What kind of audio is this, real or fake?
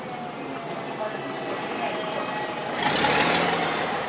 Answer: real